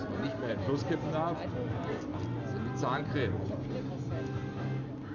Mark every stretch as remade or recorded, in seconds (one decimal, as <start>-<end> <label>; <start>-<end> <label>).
0.0-5.1 recorded